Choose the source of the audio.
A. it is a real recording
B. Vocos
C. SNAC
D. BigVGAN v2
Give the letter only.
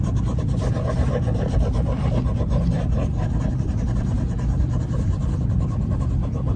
A